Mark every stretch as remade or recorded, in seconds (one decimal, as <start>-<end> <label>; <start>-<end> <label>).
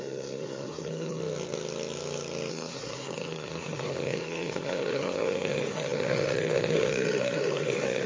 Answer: 0.0-1.2 remade; 1.2-2.5 recorded; 2.5-8.1 remade